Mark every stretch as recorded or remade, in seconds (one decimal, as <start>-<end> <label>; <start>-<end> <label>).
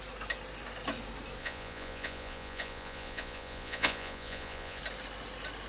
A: 0.0-1.4 recorded; 1.4-4.8 remade; 4.8-5.7 recorded